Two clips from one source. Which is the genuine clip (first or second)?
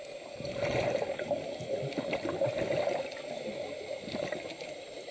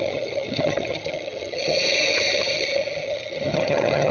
first